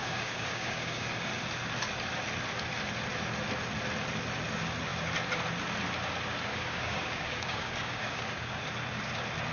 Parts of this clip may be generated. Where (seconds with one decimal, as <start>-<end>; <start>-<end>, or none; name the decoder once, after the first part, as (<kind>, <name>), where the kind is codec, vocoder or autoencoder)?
0.0-1.3 (codec, DAC); 6.5-8.6